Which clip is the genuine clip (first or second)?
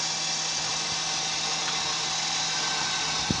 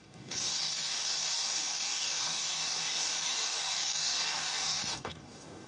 first